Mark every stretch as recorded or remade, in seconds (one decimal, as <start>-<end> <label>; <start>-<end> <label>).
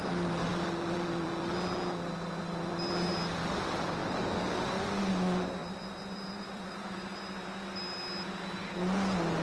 0.0-0.5 recorded; 0.5-1.3 remade; 1.3-5.6 recorded; 5.6-6.7 remade; 6.7-9.4 recorded